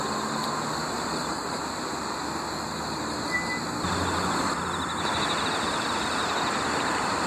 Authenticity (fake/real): real